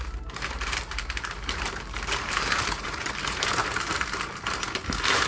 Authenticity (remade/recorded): remade